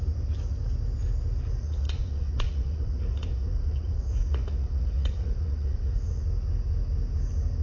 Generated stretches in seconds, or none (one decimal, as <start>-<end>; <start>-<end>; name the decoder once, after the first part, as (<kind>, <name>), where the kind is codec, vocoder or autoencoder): 1.6-6.2 (vocoder, Vocos)

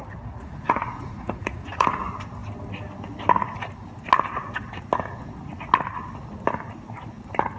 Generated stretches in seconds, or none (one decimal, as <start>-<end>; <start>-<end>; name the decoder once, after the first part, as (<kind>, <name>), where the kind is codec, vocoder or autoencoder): 0.4-2.0 (vocoder, Vocos)

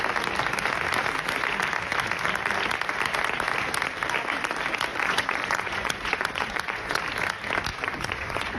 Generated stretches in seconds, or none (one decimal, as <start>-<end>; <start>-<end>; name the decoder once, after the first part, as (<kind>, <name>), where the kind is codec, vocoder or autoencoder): 4.9-7.0 (vocoder, Vocos); 7.7-8.6

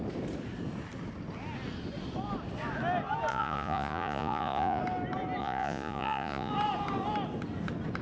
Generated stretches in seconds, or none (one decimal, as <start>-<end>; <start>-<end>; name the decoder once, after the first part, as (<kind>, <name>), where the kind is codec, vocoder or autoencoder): 3.3-4.8 (vocoder, Vocos); 5.4-6.5

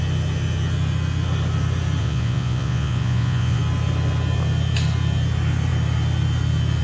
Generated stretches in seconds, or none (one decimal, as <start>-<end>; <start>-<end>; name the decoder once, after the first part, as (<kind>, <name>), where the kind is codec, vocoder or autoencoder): 2.0-3.6 (vocoder, Vocos)